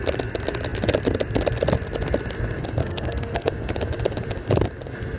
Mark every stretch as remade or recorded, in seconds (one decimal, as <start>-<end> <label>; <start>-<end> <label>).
0.0-2.8 recorded; 2.8-3.5 remade; 3.5-5.2 recorded